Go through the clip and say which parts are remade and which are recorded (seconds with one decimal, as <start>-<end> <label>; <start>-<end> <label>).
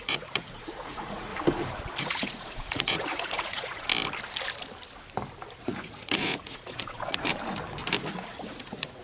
0.0-1.3 remade; 1.3-2.0 recorded; 2.0-3.9 remade; 3.9-5.6 recorded; 5.6-7.3 remade; 7.3-8.0 recorded; 8.0-9.0 remade